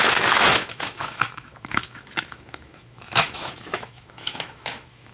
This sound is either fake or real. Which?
fake